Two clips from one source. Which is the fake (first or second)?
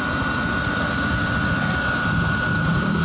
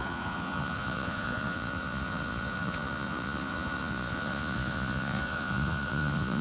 second